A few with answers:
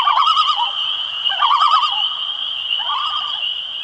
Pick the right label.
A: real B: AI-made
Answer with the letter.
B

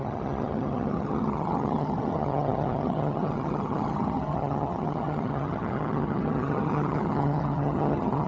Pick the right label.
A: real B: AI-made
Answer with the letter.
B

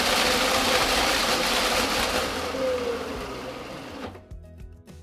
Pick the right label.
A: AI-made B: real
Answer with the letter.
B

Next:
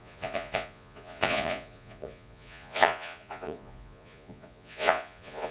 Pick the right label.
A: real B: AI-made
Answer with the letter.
B